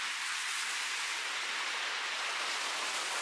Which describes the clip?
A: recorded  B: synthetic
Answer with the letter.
A